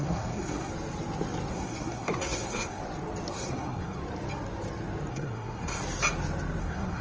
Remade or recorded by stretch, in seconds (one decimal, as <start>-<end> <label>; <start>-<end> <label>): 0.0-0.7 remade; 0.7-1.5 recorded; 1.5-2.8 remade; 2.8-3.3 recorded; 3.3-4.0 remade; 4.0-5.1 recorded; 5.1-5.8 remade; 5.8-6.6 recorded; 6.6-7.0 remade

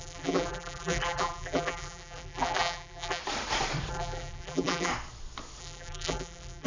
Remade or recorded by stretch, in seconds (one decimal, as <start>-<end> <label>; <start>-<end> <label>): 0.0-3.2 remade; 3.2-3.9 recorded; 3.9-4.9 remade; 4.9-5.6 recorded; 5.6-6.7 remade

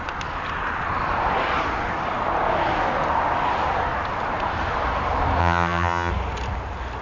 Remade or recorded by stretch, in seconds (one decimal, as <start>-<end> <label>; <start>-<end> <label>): 0.0-5.4 recorded; 5.4-6.1 remade; 6.1-7.0 recorded

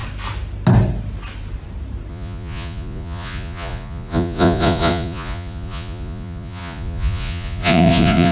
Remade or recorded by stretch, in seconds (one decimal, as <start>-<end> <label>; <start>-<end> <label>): 0.0-2.1 recorded; 2.1-8.3 remade

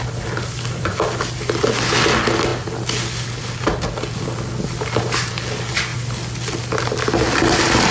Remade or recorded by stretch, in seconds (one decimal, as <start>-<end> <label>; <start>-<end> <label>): 0.0-7.9 recorded

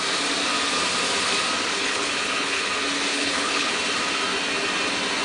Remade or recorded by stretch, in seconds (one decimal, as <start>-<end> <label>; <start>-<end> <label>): 0.0-1.7 recorded; 1.7-2.7 remade; 2.7-3.1 recorded; 3.1-3.7 remade; 3.7-5.2 recorded

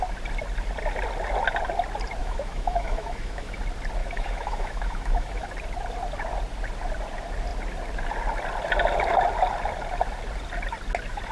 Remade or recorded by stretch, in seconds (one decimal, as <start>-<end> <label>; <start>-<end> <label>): 0.0-2.2 recorded; 2.2-3.6 remade; 3.6-4.0 recorded; 4.0-5.5 remade; 5.5-11.3 recorded

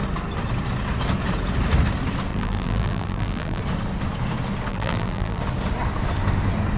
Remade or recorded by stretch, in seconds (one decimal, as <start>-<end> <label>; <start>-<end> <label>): 0.0-2.3 recorded; 2.3-3.6 remade; 3.6-4.7 recorded; 4.7-5.4 remade; 5.4-6.8 recorded